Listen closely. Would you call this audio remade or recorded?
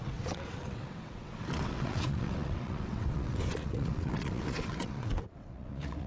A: remade